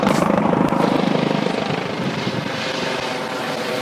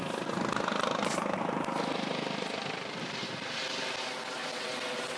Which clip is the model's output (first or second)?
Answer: first